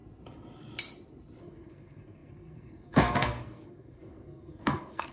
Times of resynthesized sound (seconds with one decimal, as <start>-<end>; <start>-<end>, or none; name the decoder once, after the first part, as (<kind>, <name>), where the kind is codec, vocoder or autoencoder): 1.4-5.1 (codec, SNAC)